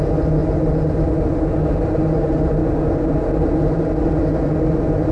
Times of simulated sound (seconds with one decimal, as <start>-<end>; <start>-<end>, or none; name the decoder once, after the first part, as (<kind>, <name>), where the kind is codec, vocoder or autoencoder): none